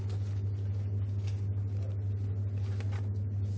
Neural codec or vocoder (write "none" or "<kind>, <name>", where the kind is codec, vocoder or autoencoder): none